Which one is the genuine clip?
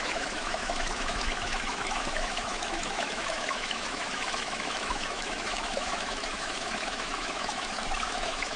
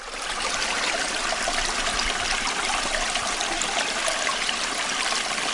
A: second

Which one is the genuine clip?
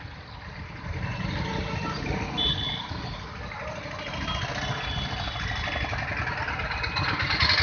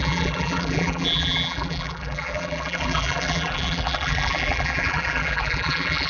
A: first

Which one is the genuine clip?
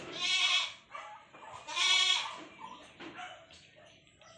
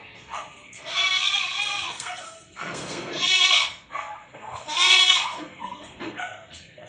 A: first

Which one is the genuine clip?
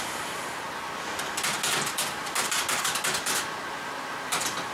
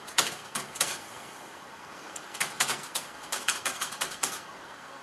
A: first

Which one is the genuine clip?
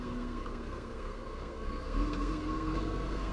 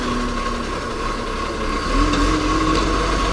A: second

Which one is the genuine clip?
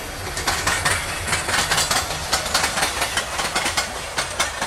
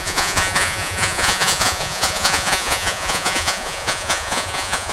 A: first